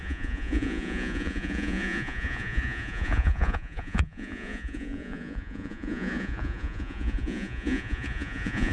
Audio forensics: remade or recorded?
remade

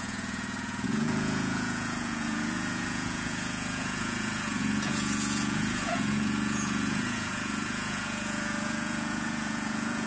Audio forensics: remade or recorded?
remade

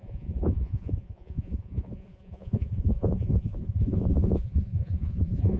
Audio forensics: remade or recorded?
remade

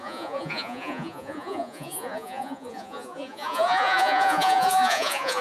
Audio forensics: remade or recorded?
remade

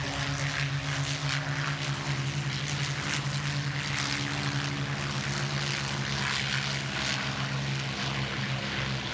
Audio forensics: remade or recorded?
recorded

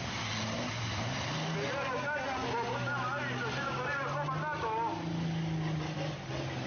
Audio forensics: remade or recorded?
recorded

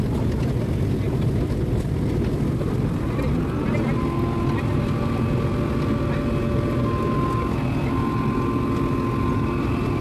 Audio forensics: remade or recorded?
recorded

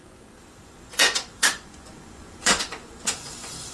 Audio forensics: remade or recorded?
remade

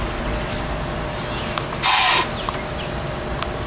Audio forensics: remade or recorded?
recorded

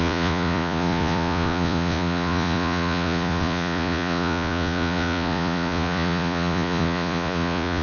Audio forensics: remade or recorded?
remade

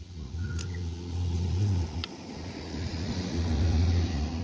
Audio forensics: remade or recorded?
remade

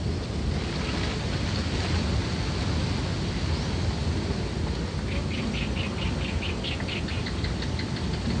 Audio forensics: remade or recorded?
recorded